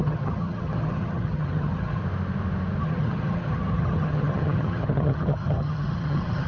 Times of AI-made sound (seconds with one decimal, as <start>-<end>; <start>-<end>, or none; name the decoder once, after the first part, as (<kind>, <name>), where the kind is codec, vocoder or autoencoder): 0.0-2.0 (vocoder, HiFi-GAN); 2.8-6.5